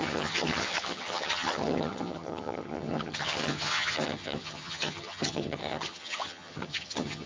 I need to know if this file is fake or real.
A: fake